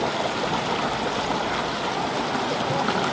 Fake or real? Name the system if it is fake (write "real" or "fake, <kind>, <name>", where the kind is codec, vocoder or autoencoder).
real